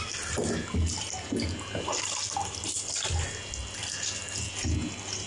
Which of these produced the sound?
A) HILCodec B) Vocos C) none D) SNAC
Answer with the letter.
C